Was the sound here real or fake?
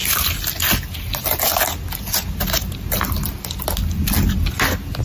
real